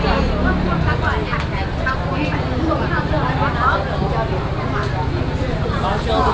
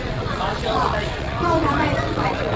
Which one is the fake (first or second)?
second